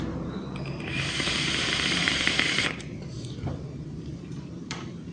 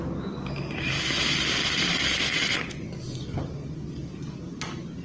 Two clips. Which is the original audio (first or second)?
second